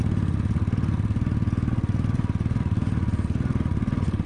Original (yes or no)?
yes